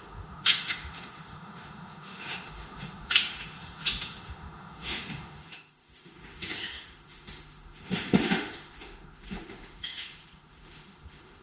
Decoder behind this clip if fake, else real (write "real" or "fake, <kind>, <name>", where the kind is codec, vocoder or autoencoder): fake, autoencoder, DAC-VAE